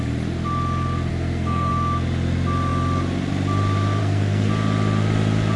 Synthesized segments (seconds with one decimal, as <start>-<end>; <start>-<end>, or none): 1.1-1.7; 4.0-4.5